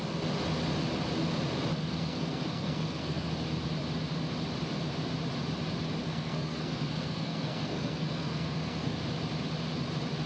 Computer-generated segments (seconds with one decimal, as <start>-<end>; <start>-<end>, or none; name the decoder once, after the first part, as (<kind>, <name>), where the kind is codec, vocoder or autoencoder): 1.8-3.3 (codec, SNAC); 6.0-9.0